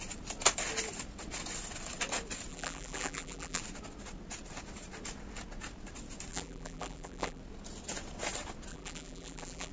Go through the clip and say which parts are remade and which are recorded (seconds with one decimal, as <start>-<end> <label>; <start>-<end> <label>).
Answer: 0.0-2.5 recorded; 2.5-3.6 remade; 3.6-6.3 recorded; 6.3-7.4 remade; 7.4-8.7 recorded; 8.7-9.7 remade